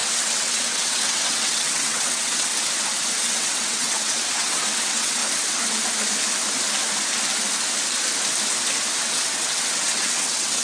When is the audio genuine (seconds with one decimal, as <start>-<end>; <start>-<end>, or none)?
2.5-3.2; 5.2-9.0